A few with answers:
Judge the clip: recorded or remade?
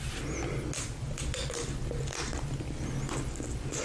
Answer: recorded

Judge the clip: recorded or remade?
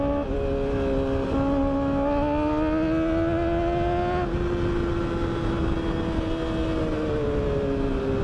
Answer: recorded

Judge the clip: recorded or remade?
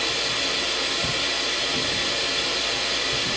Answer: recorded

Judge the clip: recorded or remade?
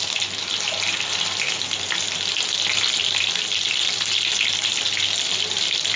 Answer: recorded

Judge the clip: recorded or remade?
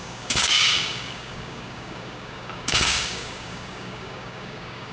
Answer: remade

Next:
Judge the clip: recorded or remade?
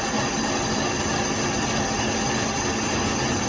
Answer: recorded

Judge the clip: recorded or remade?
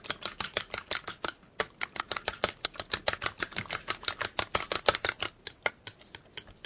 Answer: recorded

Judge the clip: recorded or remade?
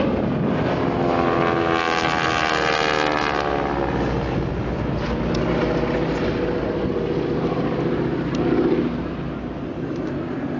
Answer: recorded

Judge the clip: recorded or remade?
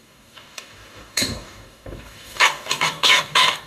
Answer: remade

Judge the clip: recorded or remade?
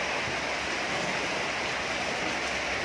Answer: recorded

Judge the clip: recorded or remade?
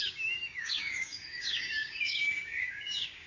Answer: remade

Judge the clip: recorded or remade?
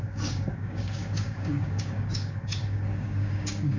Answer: remade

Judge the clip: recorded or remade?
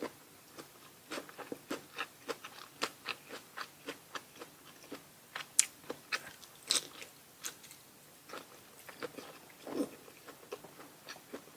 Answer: recorded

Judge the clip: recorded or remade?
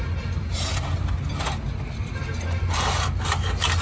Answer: recorded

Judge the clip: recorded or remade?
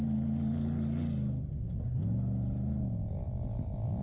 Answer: recorded